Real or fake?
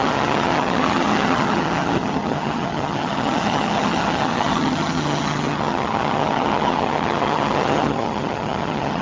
fake